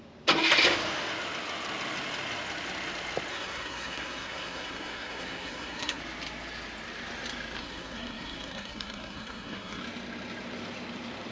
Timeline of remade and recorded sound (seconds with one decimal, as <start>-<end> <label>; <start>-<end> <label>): 0.0-3.3 recorded; 3.3-6.0 remade; 6.0-7.6 recorded; 7.6-9.8 remade; 9.8-11.3 recorded